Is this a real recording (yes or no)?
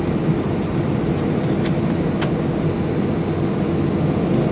yes